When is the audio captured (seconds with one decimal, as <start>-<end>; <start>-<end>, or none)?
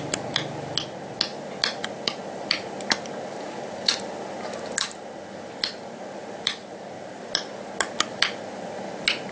0.0-9.3